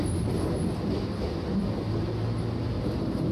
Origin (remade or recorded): recorded